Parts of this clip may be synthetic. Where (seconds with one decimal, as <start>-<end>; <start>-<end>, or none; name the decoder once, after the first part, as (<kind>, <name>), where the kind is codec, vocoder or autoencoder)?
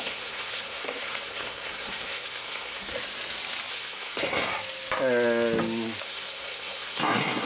0.0-2.9 (codec, SNAC); 3.7-4.5; 6.0-7.5